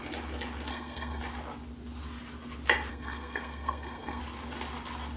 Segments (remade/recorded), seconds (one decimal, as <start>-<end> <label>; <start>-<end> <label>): 0.0-0.7 recorded; 0.7-1.2 remade; 1.2-2.9 recorded; 2.9-4.2 remade; 4.2-5.2 recorded